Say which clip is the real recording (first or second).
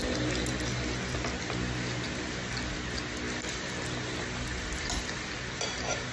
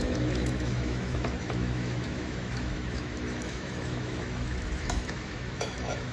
first